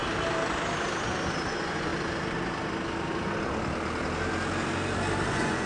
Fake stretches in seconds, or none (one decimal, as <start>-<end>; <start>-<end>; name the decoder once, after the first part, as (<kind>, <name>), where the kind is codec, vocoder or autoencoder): 1.5-1.9 (vocoder, Vocos); 5.3-5.7